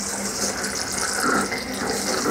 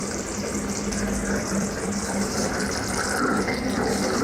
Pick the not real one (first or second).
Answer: second